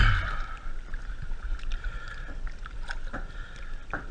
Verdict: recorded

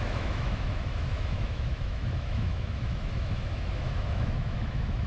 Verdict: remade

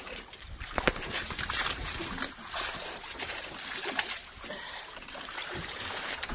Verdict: remade